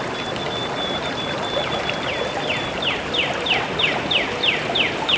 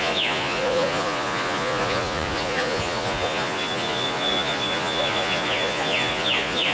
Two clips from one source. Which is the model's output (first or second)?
second